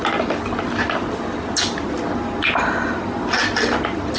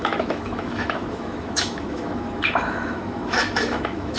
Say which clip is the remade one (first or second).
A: second